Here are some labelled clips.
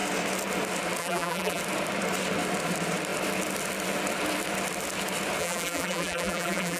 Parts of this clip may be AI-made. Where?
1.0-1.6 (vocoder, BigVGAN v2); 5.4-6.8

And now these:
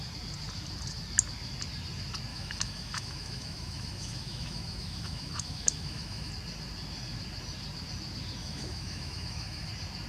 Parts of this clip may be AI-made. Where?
2.3-6.3 (autoencoder, DAC-VAE); 8.4-9.7

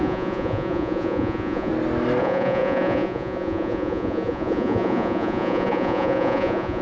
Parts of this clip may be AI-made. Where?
0.0-1.7 (vocoder, Vocos); 2.2-6.8

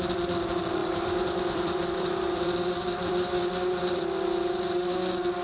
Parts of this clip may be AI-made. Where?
0.8-4.0 (vocoder, BigVGAN v2)